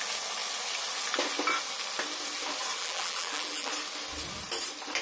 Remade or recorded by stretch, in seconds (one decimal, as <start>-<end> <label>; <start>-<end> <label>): 0.0-2.8 recorded; 2.8-3.7 remade; 3.7-5.0 recorded